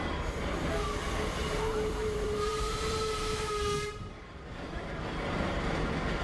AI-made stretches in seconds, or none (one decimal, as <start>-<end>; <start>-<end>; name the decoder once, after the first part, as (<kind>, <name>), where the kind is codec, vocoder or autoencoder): 1.4-5.1 (vocoder, BigVGAN v2)